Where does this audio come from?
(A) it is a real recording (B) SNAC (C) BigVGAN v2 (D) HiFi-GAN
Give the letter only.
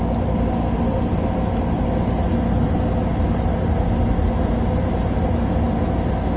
A